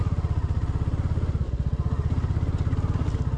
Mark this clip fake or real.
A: real